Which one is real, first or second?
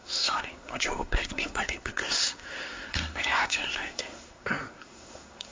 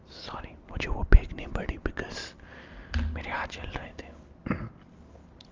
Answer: second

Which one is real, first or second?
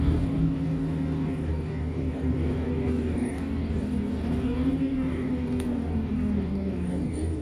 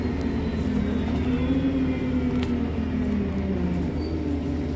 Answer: second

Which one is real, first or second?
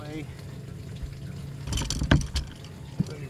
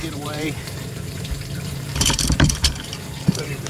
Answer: first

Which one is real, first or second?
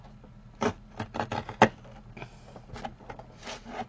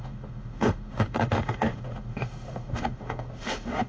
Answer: first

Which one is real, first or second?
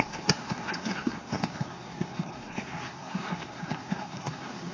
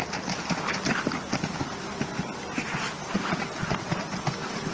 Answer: second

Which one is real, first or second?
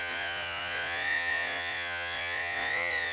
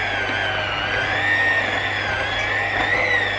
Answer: second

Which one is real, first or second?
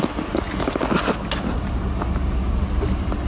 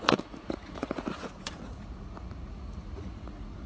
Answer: first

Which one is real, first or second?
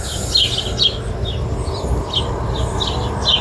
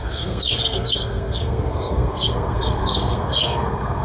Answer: first